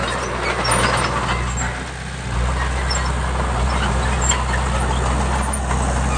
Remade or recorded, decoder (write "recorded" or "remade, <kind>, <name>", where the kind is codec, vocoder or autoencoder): recorded